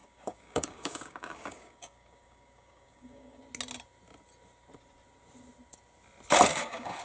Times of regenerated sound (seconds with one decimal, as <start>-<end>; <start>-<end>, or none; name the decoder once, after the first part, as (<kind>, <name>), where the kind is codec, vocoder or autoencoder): 0.0-3.4 (codec, DAC); 6.5-7.0